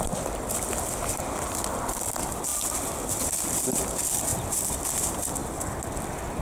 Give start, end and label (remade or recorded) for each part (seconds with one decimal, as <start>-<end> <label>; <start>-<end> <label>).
0.0-6.4 recorded